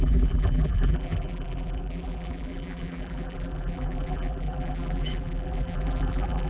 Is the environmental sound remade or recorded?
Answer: remade